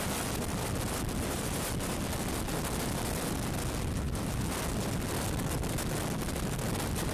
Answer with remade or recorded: recorded